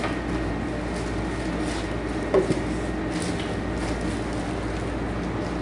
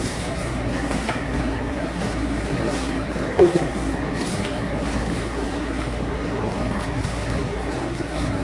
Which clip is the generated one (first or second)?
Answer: second